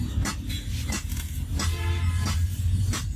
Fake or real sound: real